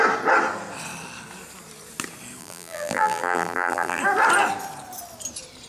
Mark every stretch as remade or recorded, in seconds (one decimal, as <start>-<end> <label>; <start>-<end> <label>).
0.0-2.4 recorded; 2.4-4.0 remade; 4.0-5.7 recorded